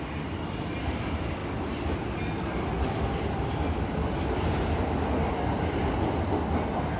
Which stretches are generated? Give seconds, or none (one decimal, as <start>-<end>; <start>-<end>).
none